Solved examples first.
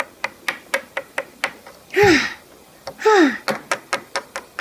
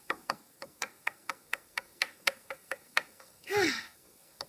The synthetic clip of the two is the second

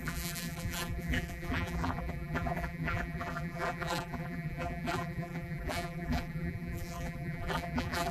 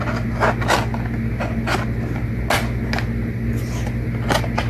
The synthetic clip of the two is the first